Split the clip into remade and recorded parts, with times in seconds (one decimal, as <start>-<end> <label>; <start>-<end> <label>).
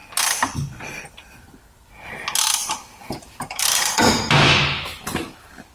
0.0-2.6 recorded; 2.6-4.3 remade; 4.3-5.7 recorded